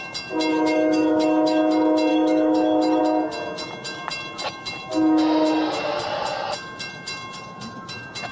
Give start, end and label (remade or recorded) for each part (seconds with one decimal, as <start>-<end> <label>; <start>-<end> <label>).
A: 0.0-0.5 recorded; 0.5-1.6 remade; 1.6-2.1 recorded; 2.1-3.0 remade; 3.0-8.3 recorded